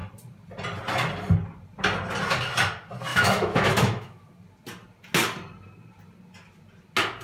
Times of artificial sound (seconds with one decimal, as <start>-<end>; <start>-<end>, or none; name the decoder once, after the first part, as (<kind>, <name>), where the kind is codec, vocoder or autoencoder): 3.1-4.2 (autoencoder, DAC-VAE)